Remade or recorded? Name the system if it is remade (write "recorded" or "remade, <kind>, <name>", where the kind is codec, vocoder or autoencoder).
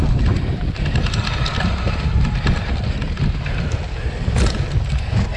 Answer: recorded